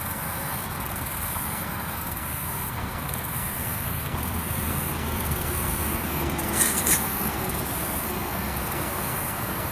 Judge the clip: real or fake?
fake